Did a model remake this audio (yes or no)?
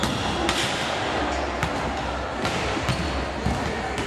no